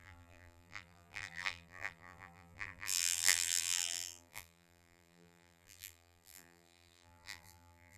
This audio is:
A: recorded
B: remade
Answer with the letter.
B